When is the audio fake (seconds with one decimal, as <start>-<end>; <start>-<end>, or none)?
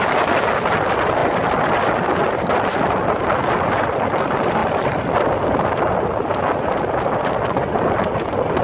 none